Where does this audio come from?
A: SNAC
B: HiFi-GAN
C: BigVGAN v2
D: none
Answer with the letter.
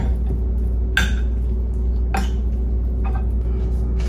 D